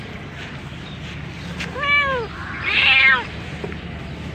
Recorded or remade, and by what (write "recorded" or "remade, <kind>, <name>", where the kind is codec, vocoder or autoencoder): recorded